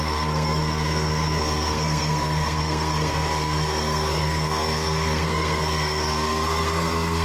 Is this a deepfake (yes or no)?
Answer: yes